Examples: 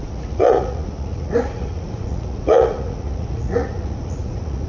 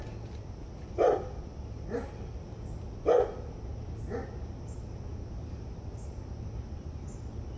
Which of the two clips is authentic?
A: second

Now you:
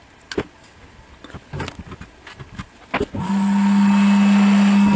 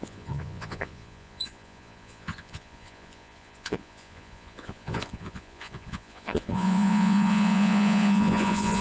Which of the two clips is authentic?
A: first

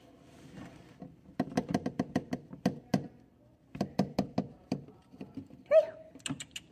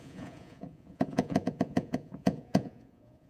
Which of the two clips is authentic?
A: first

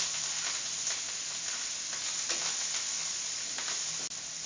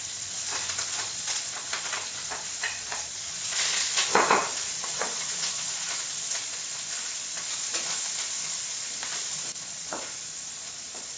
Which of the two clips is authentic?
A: first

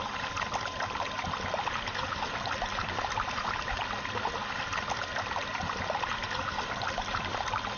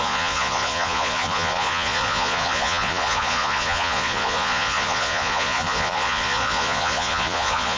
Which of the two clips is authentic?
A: first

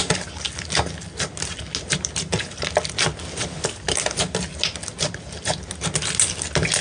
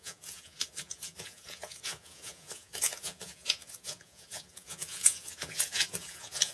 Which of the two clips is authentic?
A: first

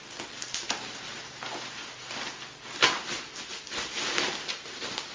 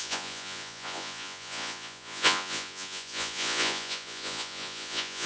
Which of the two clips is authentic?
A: first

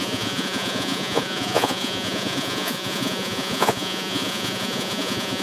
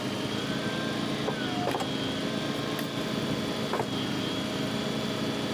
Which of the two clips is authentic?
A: second